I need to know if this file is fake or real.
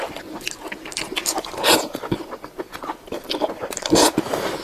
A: real